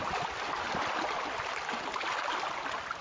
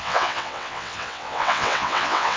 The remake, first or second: second